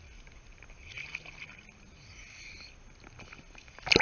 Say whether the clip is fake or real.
real